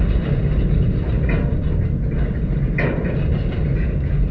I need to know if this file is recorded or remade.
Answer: recorded